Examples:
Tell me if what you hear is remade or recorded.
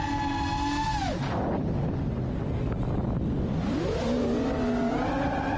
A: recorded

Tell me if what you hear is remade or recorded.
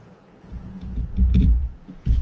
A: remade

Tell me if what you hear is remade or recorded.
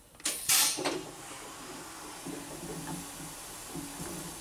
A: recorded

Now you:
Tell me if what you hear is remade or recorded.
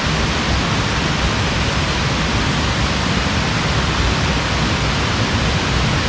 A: recorded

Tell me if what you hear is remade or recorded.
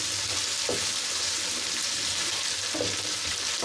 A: recorded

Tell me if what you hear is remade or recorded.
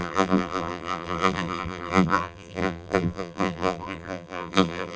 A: remade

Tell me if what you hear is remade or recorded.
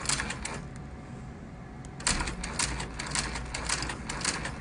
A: recorded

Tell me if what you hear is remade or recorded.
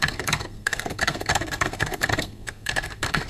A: remade